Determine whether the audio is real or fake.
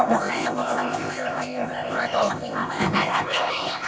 fake